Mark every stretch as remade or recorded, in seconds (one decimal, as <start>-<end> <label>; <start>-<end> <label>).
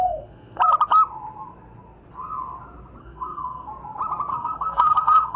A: 0.0-0.6 remade; 0.6-3.0 recorded; 3.0-3.7 remade; 3.7-4.3 recorded; 4.3-5.4 remade